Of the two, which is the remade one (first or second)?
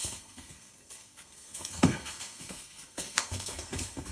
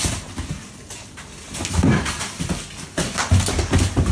first